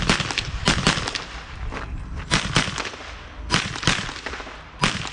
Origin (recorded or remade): recorded